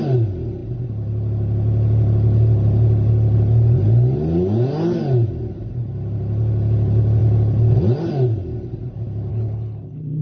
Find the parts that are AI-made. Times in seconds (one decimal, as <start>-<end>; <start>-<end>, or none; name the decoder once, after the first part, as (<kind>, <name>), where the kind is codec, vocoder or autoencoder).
9.3-10.2 (codec, HILCodec)